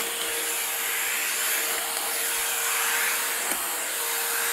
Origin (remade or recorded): recorded